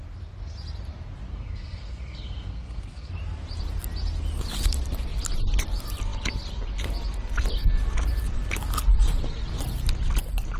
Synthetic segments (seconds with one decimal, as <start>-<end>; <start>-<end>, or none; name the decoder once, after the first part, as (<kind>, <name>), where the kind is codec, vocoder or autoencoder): 1.3-3.1 (codec, SNAC)